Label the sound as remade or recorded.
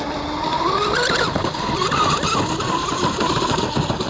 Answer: recorded